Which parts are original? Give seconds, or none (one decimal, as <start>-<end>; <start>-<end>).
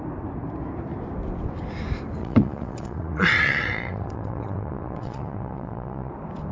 0.0-2.2; 6.1-6.5